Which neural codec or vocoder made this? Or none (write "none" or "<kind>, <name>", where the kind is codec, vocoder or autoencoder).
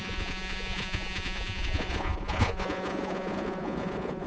vocoder, Vocos